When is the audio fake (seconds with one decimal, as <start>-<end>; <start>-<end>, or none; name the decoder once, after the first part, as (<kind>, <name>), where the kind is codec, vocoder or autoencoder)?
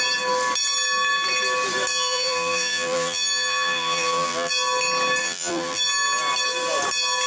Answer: 1.9-4.5 (vocoder, BigVGAN v2); 5.2-5.8